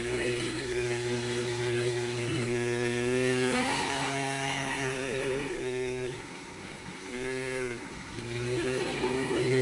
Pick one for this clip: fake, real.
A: fake